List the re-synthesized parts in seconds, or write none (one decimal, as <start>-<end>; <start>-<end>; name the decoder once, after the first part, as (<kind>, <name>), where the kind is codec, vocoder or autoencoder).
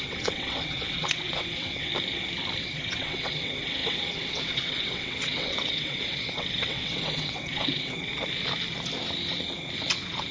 0.0-1.9 (vocoder, WaveNeXt); 2.6-8.1